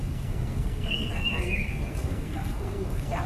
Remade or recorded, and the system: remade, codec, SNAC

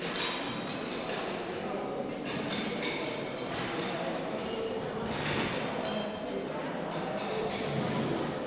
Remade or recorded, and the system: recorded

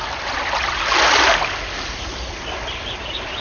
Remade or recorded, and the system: recorded